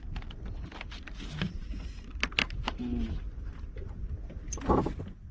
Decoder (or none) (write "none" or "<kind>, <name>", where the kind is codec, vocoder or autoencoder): none